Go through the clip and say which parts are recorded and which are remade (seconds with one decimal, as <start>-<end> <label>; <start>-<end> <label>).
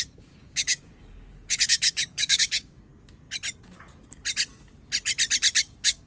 0.0-2.9 remade; 2.9-5.6 recorded; 5.6-6.1 remade